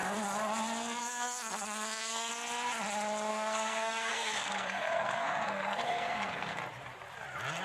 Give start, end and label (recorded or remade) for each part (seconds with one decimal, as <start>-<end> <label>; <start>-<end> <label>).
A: 0.0-1.0 recorded; 1.0-2.3 remade; 2.3-3.3 recorded; 3.3-6.6 remade; 6.6-7.6 recorded